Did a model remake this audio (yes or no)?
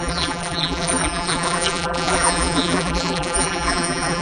yes